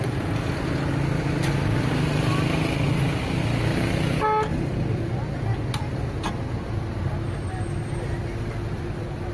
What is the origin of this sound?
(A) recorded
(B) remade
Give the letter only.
A